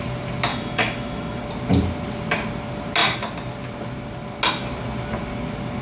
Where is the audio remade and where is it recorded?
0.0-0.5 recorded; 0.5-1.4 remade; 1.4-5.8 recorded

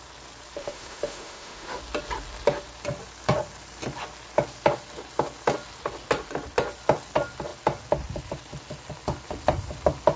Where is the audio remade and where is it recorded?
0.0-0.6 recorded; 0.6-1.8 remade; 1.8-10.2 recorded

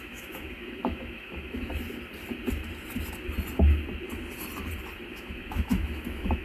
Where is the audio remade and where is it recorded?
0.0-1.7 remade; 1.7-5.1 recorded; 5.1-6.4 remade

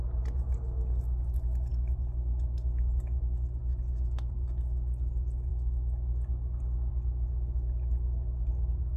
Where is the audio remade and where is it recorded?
0.0-9.0 recorded